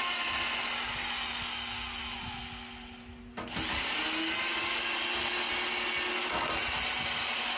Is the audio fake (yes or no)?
no